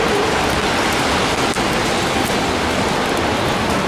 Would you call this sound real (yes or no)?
yes